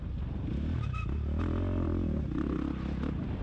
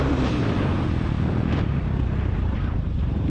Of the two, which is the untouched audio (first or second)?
first